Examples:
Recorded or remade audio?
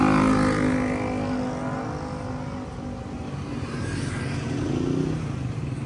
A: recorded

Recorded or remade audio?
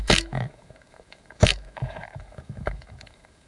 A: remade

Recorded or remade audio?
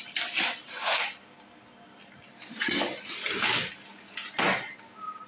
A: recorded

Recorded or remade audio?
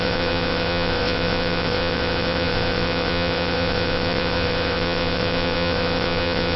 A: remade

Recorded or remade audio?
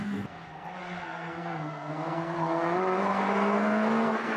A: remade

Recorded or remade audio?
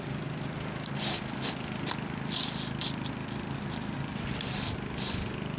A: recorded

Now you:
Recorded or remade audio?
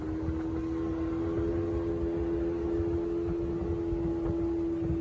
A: recorded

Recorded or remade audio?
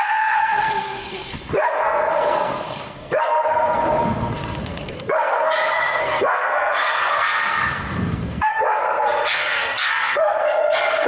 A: remade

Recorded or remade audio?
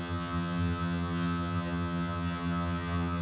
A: remade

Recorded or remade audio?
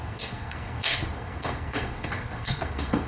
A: remade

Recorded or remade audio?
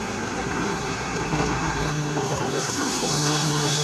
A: remade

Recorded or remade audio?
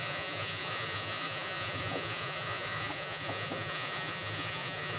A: remade